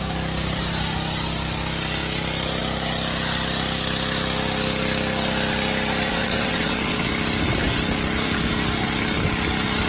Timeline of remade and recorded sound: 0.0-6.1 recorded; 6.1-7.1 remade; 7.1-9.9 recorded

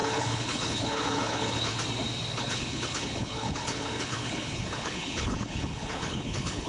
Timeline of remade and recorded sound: 0.0-1.7 remade; 1.7-2.3 recorded; 2.3-6.7 remade

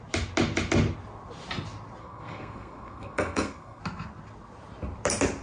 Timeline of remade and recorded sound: 0.0-2.0 recorded; 2.0-3.8 remade; 3.8-5.4 recorded